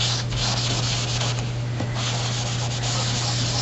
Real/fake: real